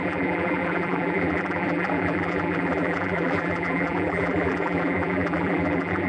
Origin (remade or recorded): remade